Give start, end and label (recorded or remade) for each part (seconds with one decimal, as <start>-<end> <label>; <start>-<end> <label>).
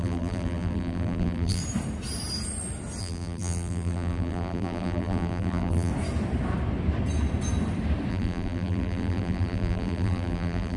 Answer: 0.0-1.6 remade; 1.6-3.0 recorded; 3.0-5.9 remade; 5.9-8.1 recorded; 8.1-10.8 remade